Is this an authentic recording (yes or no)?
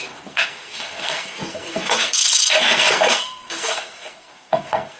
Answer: no